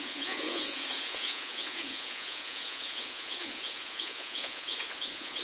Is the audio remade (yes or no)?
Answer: yes